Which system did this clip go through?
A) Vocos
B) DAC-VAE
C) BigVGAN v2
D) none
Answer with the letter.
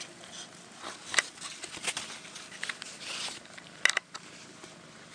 D